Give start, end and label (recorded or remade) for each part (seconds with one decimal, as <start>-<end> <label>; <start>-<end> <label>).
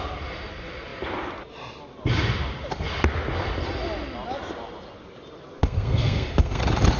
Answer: 0.0-5.6 recorded; 5.6-6.6 remade; 6.6-7.0 recorded